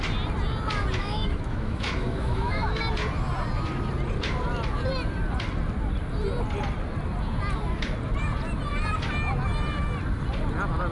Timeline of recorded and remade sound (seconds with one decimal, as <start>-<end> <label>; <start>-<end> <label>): 0.0-1.0 recorded; 1.0-2.8 remade; 2.8-10.9 recorded